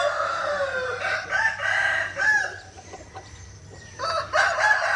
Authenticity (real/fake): fake